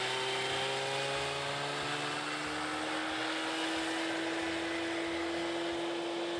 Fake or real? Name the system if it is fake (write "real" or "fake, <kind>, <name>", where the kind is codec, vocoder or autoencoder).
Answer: real